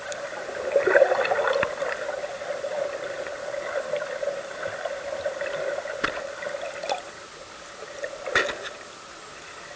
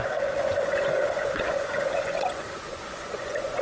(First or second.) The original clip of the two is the first